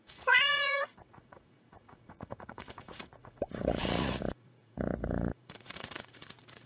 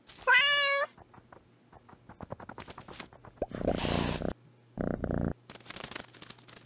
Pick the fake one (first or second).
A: first